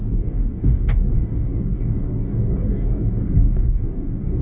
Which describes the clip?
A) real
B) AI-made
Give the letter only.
B